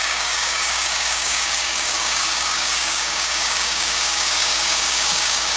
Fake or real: fake